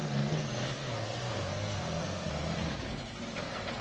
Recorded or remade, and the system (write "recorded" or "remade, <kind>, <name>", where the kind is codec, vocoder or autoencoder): remade, codec, SNAC